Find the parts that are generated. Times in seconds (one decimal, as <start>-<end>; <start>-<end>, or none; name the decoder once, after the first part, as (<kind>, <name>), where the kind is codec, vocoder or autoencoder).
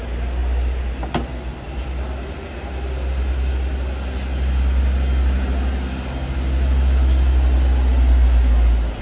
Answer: none